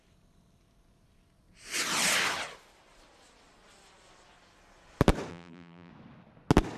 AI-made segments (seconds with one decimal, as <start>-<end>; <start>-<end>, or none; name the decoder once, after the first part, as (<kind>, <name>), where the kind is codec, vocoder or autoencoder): 5.3-5.9 (vocoder, BigVGAN v2)